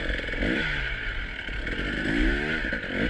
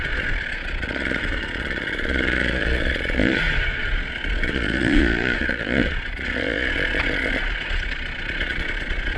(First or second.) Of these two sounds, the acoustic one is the first